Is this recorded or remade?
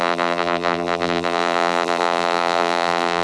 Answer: remade